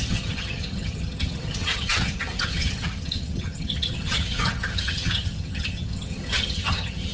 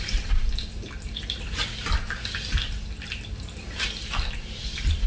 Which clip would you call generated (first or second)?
first